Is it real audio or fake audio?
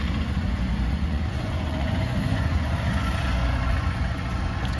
fake